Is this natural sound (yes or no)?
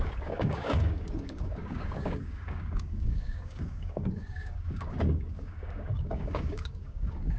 no